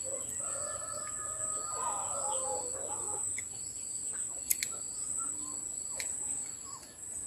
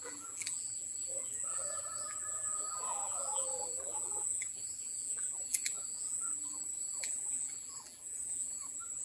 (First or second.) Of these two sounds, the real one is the first